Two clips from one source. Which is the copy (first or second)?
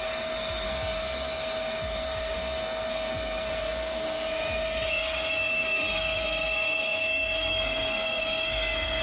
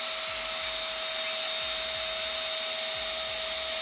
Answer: first